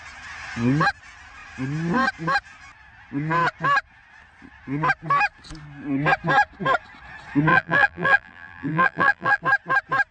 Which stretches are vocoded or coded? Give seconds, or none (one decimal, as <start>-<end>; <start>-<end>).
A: 7.5-9.4